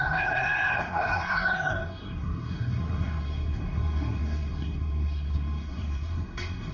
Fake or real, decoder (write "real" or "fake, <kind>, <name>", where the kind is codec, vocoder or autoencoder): fake, codec, SNAC